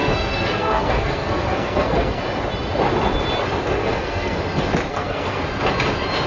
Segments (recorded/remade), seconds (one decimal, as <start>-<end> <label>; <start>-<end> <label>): 0.0-2.2 remade; 2.2-3.8 recorded; 3.8-4.4 remade; 4.4-4.9 recorded; 4.9-5.4 remade; 5.4-6.3 recorded